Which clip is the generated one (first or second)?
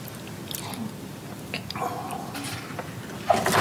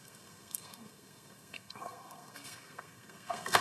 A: second